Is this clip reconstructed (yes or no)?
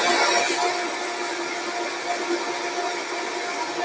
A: no